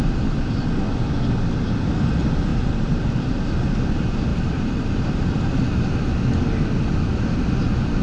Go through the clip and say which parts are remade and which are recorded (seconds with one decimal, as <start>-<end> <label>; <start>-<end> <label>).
0.0-2.5 recorded; 2.5-3.5 remade; 3.5-4.3 recorded; 4.3-5.2 remade; 5.2-8.0 recorded